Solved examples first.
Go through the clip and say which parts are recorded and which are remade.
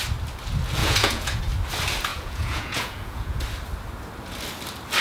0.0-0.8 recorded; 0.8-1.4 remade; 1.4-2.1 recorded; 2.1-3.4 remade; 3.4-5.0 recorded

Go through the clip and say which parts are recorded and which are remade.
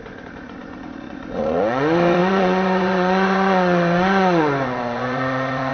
0.0-5.7 remade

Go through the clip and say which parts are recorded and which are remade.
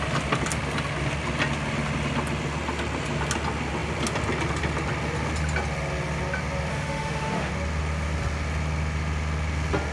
0.0-6.7 recorded; 6.7-7.5 remade; 7.5-9.9 recorded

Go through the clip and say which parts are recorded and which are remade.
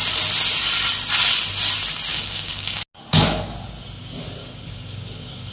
0.0-2.1 recorded; 2.1-2.8 remade; 2.8-4.4 recorded; 4.4-5.5 remade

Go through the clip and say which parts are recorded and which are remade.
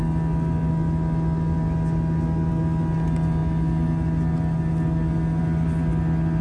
0.0-6.4 recorded